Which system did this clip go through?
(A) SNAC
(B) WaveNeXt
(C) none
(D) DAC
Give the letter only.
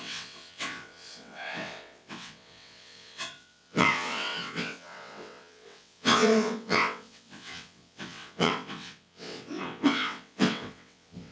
B